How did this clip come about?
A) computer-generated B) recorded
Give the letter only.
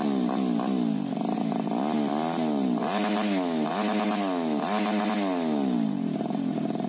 B